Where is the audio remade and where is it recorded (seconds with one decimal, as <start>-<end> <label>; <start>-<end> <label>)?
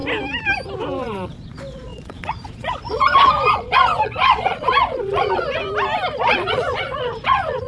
0.0-1.0 recorded; 1.0-5.6 remade; 5.6-6.1 recorded; 6.1-7.7 remade